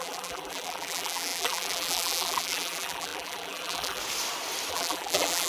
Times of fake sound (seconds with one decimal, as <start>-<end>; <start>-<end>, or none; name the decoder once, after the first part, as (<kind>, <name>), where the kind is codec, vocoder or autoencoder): 0.0-4.0 (vocoder, BigVGAN v2); 4.7-5.5